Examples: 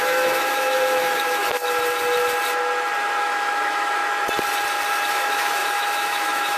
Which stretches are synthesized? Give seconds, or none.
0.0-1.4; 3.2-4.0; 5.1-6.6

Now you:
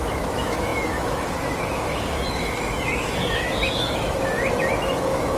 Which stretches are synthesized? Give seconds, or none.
0.0-5.4